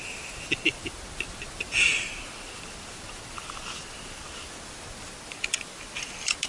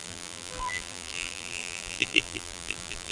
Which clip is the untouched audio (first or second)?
first